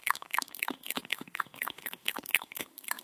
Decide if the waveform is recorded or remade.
remade